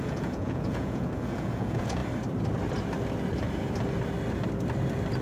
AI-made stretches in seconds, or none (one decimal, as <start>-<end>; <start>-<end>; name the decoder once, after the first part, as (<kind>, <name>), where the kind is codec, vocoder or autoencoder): 0.0-2.0 (vocoder, Vocos)